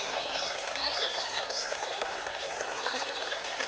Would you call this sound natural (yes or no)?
no